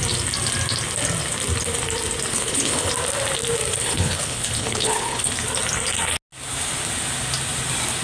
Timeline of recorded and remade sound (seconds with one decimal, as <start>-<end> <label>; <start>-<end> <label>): 0.0-2.3 recorded; 2.3-2.9 remade; 2.9-3.8 recorded; 3.8-5.3 remade; 5.3-8.0 recorded